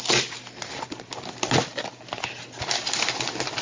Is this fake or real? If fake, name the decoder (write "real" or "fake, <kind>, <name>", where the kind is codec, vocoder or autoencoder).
real